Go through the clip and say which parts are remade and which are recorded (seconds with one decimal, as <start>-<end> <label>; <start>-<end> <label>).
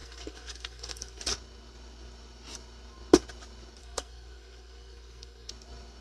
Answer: 0.0-1.2 remade; 1.2-3.8 recorded; 3.8-5.5 remade; 5.5-6.0 recorded